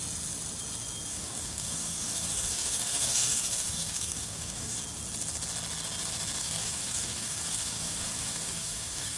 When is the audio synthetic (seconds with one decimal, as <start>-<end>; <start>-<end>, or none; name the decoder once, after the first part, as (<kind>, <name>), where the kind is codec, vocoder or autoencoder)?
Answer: 1.1-4.8 (codec, DAC); 6.4-9.2

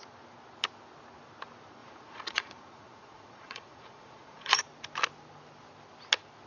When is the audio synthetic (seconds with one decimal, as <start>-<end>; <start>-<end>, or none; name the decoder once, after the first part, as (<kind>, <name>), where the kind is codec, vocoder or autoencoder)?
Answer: 1.8-4.6 (vocoder, Vocos)

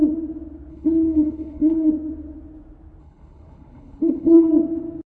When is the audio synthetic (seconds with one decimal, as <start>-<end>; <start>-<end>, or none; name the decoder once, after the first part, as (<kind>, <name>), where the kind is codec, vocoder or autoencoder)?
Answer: 0.7-1.9 (codec, HILCodec); 3.0-4.5

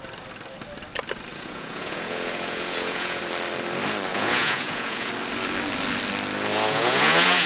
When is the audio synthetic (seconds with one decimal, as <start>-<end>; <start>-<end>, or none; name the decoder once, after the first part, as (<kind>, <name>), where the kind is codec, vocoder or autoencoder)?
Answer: 1.3-3.2 (vocoder, Vocos); 4.1-5.1; 6.5-7.5

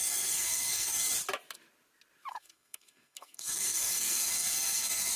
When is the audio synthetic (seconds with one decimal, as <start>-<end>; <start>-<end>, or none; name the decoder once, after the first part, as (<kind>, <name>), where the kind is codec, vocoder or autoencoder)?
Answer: 0.0-1.0 (codec, SNAC); 2.3-5.2

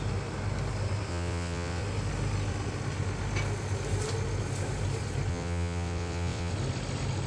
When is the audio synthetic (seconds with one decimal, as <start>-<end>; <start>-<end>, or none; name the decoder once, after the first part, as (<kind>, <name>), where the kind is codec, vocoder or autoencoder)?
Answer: 1.1-1.8 (vocoder, WaveNeXt); 5.3-6.5

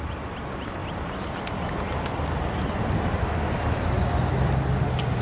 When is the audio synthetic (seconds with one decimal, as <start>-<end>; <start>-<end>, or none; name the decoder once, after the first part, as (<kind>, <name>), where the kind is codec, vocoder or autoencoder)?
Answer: 0.8-3.9 (vocoder, BigVGAN v2)

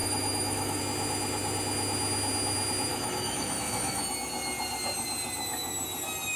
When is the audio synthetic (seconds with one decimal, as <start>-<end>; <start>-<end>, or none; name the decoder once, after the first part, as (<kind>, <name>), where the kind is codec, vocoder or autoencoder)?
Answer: 0.0-0.8 (autoencoder, DAC-VAE); 2.9-4.0